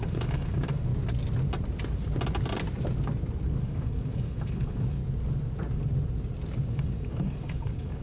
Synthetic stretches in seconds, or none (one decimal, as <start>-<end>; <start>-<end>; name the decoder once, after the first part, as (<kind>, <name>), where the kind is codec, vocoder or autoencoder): 0.0-0.9 (codec, DAC); 3.6-5.0; 6.7-8.0